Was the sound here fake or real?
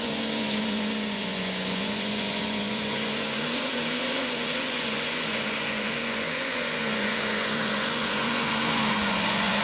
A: fake